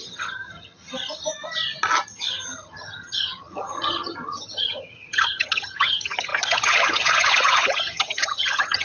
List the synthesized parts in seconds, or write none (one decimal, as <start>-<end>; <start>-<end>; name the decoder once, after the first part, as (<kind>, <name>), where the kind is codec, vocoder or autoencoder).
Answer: 0.0-0.8 (vocoder, HiFi-GAN); 2.2-8.8